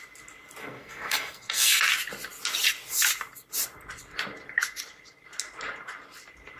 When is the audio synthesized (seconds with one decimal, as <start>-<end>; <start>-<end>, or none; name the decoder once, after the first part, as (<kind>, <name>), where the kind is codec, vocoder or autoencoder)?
0.6-1.8 (codec, SNAC)